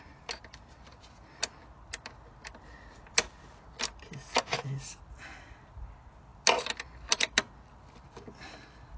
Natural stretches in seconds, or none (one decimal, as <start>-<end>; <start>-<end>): 0.0-9.0

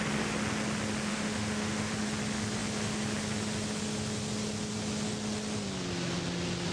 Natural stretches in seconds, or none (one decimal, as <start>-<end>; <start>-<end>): 0.0-1.1; 1.9-6.7

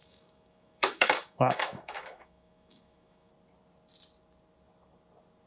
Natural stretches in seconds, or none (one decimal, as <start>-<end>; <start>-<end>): 3.3-5.5

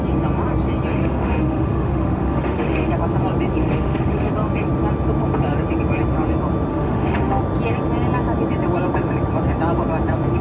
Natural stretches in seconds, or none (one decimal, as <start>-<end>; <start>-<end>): 0.0-0.9; 2.9-3.6; 4.3-6.7; 7.4-10.4

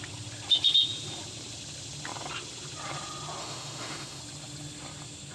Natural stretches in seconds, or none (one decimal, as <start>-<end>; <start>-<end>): 0.0-3.4; 4.2-5.3

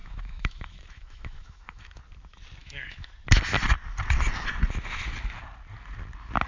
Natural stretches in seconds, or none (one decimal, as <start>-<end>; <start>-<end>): 2.0-2.6; 3.1-6.5

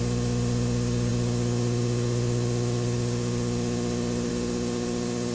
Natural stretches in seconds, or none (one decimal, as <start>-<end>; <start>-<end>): 0.0-5.3